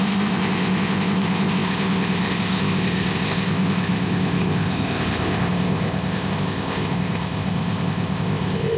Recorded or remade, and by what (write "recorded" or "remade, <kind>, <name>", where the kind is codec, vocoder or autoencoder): remade, codec, ZipCodec